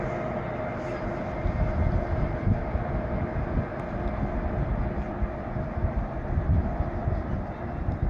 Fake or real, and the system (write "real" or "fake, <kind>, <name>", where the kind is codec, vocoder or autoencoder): real